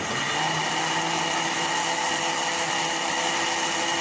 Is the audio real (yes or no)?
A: yes